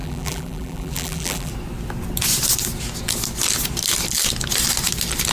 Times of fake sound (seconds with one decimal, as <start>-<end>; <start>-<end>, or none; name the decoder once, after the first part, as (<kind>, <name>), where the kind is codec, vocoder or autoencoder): 0.0-1.5 (vocoder, BigVGAN v2)